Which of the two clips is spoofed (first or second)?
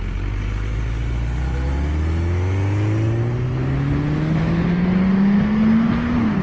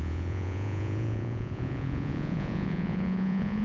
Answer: second